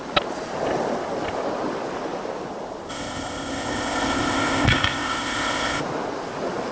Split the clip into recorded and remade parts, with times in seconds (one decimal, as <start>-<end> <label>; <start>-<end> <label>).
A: 0.0-2.9 recorded; 2.9-5.8 remade; 5.8-6.7 recorded